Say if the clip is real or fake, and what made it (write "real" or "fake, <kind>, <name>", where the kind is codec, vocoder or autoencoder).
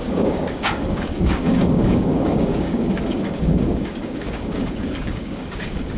fake, codec, DAC